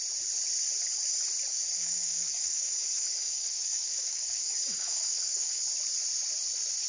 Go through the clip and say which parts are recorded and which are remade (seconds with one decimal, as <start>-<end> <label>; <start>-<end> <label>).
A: 0.0-1.5 recorded; 1.5-5.6 remade; 5.6-6.9 recorded